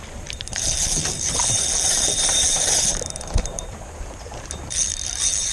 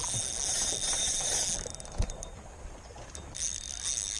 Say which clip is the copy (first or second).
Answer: first